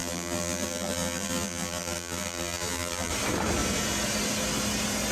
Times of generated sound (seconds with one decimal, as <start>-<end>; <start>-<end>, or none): 0.0-3.1